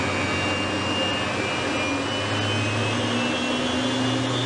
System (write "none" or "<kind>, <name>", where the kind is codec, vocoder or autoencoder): none